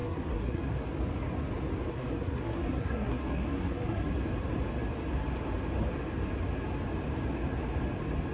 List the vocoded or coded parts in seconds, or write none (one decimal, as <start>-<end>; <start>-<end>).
0.0-0.8; 1.9-4.1